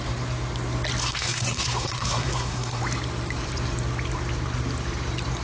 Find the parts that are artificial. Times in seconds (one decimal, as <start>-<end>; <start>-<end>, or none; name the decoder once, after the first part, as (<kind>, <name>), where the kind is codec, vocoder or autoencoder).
1.0-2.8 (codec, SNAC)